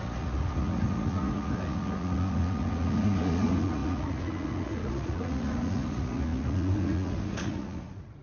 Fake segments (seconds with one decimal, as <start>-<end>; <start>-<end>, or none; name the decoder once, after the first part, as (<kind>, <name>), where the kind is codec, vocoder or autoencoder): 0.0-8.2 (vocoder, Vocos)